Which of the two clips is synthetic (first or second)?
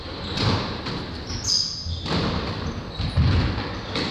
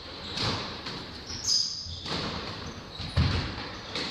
second